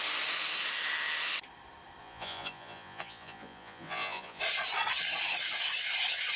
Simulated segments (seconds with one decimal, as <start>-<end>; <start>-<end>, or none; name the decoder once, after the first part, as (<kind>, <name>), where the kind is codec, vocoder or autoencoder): 2.0-4.4 (vocoder, Vocos)